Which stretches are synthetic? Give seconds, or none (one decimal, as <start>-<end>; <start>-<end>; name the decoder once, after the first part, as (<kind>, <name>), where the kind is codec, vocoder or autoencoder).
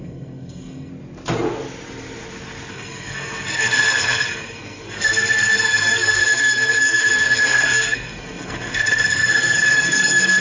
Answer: 0.0-0.9 (codec, SNAC); 2.7-10.4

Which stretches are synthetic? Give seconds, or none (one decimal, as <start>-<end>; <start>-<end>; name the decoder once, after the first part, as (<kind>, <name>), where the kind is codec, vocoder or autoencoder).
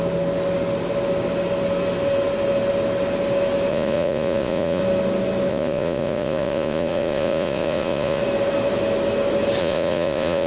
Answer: 3.7-4.8 (vocoder, Vocos); 5.5-8.2; 9.6-10.5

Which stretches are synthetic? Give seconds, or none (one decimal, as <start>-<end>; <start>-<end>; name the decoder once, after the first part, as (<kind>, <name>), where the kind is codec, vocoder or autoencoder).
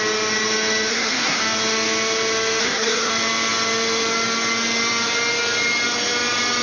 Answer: 0.9-1.4 (codec, SNAC); 2.6-3.1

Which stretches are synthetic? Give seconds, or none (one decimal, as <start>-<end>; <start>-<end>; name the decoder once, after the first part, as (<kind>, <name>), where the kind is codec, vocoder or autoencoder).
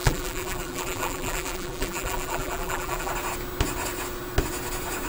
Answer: 0.0-3.1 (vocoder, BigVGAN v2)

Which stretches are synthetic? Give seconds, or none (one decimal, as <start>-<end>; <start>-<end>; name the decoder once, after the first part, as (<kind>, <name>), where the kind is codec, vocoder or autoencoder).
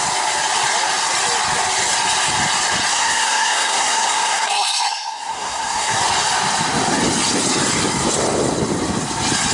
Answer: 2.9-6.0 (codec, SNAC)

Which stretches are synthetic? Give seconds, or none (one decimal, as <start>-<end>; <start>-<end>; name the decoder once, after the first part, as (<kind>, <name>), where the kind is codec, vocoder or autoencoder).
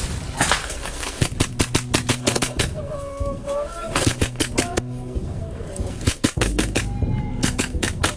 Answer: 0.6-1.3 (codec, SNAC); 2.1-6.8; 7.2-8.2